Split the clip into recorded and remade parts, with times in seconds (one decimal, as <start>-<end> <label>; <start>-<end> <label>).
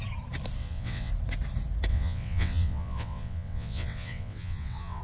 0.0-0.6 recorded; 0.6-1.1 remade; 1.1-1.9 recorded; 1.9-5.0 remade